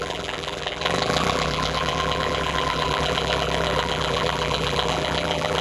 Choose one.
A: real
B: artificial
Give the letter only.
B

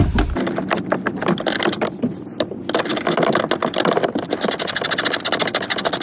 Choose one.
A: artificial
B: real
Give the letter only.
B